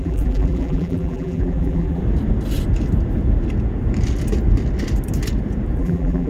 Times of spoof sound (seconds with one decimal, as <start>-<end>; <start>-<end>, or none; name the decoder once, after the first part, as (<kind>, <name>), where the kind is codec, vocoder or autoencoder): 0.0-2.0 (vocoder, BigVGAN v2); 5.8-6.3